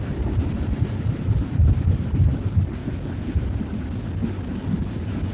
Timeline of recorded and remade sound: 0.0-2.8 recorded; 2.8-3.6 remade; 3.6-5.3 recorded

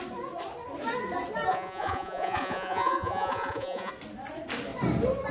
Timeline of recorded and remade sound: 0.0-1.5 recorded; 1.5-3.9 remade; 3.9-5.3 recorded

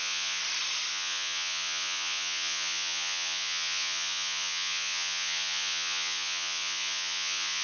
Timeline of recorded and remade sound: 0.0-0.4 remade; 0.4-0.9 recorded; 0.9-7.6 remade

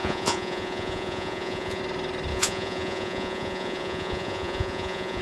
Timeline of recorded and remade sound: 0.0-1.8 remade; 1.8-2.3 recorded; 2.3-5.2 remade